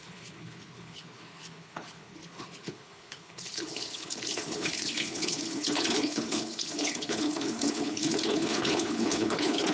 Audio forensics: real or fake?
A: fake